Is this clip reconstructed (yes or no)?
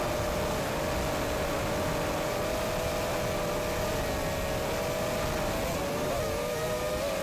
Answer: no